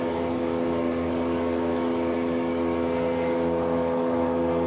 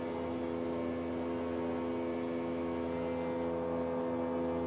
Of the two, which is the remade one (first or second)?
first